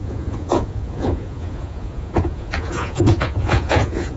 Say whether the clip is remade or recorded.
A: remade